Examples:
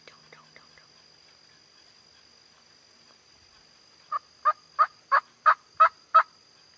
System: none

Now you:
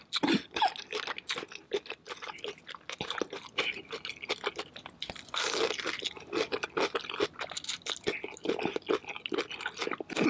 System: none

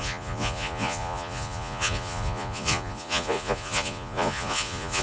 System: vocoder, Vocos